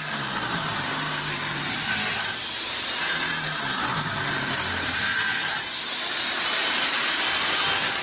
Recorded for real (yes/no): no